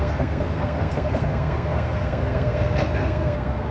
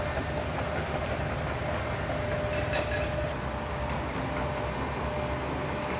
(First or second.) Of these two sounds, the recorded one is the second